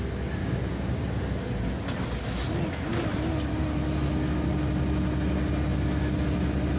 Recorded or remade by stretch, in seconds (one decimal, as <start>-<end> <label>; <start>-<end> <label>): 0.0-0.4 recorded; 0.4-1.0 remade; 1.0-6.8 recorded